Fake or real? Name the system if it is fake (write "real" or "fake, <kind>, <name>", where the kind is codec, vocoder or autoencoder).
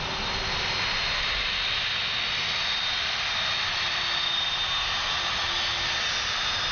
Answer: real